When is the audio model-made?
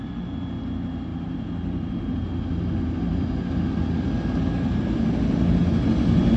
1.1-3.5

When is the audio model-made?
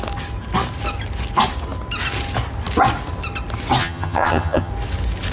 3.8-4.7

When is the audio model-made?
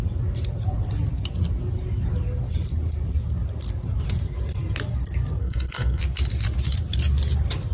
5.4-6.0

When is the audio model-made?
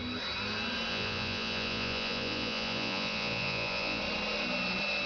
0.9-4.0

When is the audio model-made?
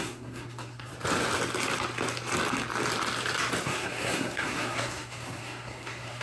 0.0-0.9; 3.6-6.2